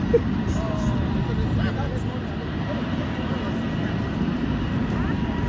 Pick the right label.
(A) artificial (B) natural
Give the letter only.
B